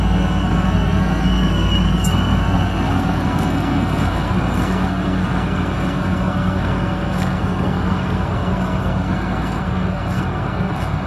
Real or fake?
fake